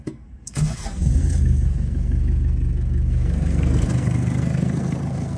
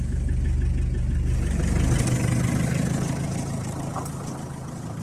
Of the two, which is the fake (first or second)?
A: first